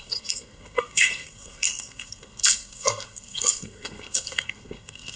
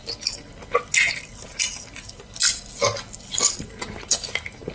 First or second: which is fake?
first